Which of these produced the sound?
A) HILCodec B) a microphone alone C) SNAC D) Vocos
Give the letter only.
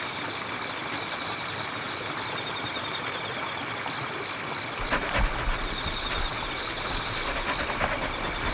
B